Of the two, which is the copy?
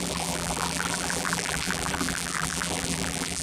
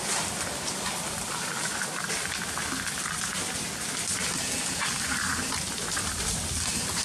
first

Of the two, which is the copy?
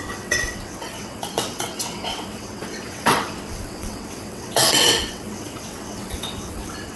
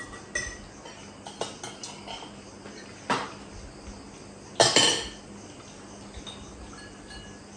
first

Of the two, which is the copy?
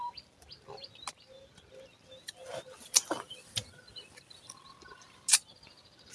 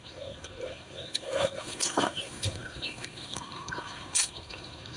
second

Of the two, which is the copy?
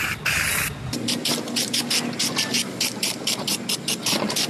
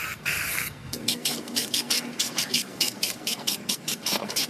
second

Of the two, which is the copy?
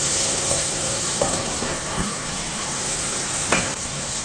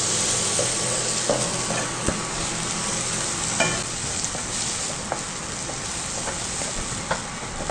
first